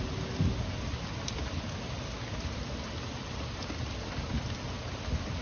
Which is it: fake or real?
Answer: real